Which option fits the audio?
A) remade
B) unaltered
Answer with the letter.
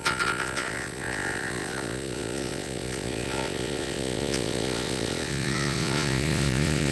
A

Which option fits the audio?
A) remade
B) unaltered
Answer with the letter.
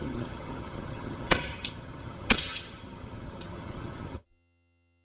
A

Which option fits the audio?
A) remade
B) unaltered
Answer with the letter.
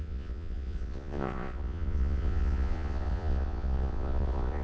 A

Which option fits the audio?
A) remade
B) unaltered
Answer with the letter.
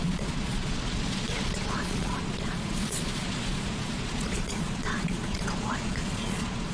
A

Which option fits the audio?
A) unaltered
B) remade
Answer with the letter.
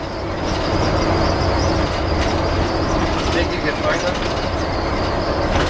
A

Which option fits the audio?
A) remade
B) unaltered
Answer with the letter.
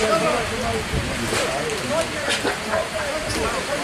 B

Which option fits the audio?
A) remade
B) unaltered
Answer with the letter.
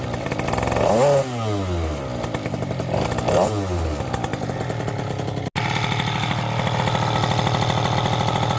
B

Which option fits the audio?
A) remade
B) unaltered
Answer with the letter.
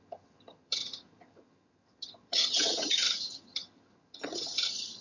A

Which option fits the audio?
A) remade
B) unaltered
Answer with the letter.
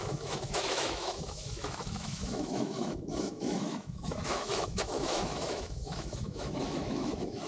A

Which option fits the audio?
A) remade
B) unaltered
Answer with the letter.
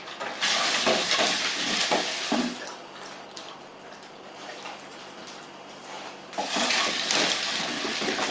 B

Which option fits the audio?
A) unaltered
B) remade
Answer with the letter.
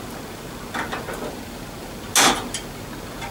A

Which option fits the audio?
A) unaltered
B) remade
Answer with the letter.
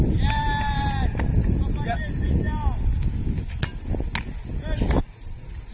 A